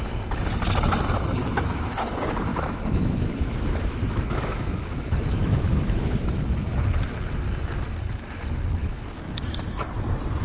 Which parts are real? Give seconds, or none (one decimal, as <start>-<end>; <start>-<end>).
0.0-1.4; 1.9-2.5; 6.4-10.4